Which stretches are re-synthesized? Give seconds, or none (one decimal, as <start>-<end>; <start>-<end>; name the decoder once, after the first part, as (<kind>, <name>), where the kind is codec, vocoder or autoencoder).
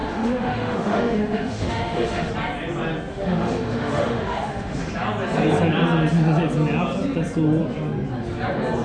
0.0-2.3 (autoencoder, DAC-VAE); 3.1-4.9